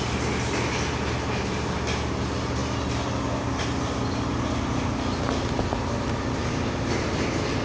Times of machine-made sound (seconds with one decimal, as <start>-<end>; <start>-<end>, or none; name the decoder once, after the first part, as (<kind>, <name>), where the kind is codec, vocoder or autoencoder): none